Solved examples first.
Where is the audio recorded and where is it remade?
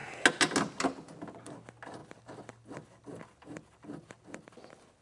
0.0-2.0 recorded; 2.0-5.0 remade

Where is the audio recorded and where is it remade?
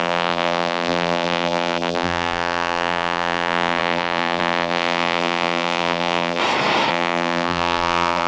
0.0-6.4 remade; 6.4-6.9 recorded; 6.9-8.3 remade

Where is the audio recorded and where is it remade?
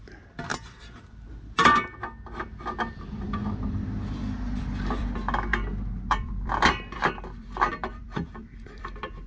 0.0-0.5 remade; 0.5-2.4 recorded; 2.4-3.4 remade; 3.4-4.2 recorded; 4.2-9.3 remade